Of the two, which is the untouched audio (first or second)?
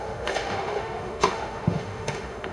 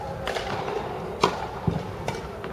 second